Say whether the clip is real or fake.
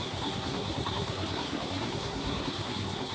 fake